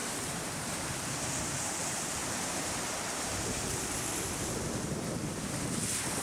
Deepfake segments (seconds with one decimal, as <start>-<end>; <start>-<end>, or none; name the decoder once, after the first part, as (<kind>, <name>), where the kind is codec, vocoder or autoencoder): 2.2-3.8 (vocoder, BigVGAN v2)